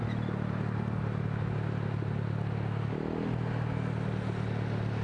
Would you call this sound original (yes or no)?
yes